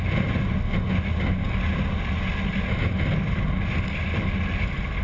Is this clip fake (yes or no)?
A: no